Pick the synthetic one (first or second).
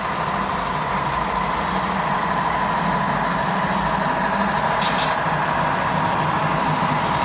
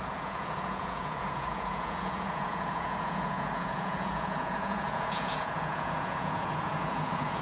second